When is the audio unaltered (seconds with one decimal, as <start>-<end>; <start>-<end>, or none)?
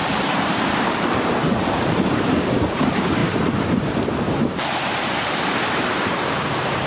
none